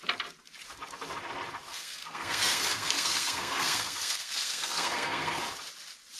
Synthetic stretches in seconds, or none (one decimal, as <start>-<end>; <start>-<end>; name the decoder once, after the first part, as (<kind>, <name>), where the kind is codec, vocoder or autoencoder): 1.7-5.4 (codec, SNAC)